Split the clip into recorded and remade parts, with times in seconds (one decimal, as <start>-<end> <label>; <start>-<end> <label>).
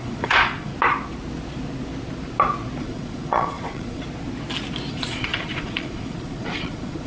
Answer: 0.0-0.7 remade; 0.7-2.8 recorded; 2.8-4.0 remade; 4.0-4.9 recorded; 4.9-7.1 remade